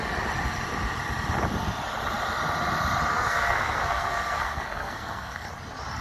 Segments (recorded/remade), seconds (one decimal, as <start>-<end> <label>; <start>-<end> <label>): 0.0-3.1 recorded; 3.1-5.5 remade; 5.5-6.0 recorded